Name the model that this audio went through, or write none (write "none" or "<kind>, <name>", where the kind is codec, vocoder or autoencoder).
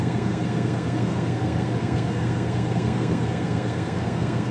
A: codec, SNAC